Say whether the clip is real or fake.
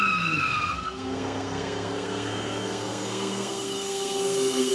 fake